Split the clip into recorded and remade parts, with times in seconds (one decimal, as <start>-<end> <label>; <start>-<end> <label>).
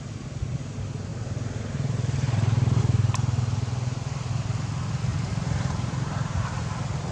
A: 0.0-1.1 recorded; 1.1-2.8 remade; 2.8-5.1 recorded; 5.1-6.5 remade; 6.5-7.1 recorded